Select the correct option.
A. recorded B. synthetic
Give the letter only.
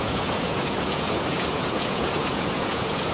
B